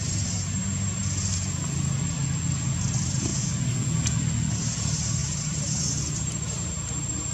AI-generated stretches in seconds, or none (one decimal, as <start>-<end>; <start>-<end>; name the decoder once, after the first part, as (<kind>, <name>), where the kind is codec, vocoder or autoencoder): 0.0-1.0 (vocoder, BigVGAN v2); 2.8-3.3; 4.5-7.3